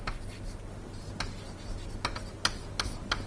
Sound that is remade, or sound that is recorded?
recorded